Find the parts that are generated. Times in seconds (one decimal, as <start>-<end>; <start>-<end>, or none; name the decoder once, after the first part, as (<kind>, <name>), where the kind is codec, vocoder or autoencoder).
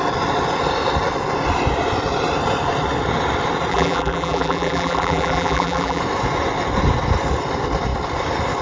3.7-6.0 (vocoder, BigVGAN v2)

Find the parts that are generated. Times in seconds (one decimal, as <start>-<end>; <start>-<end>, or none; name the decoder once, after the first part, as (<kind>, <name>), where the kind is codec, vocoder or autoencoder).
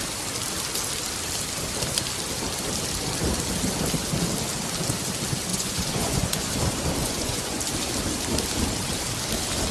5.5-6.5 (vocoder, Vocos); 7.0-7.6